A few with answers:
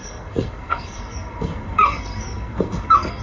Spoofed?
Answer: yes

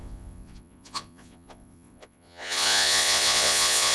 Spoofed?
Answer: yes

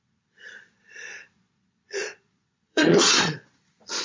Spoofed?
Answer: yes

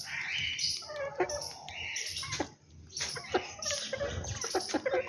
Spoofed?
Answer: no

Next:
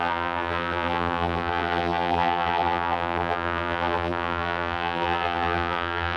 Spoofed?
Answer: yes